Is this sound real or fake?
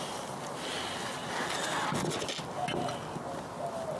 real